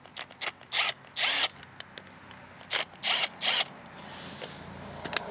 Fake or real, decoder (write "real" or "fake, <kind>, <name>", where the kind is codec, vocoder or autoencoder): real